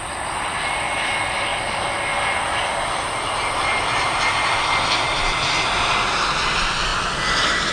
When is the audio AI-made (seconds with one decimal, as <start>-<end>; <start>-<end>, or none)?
none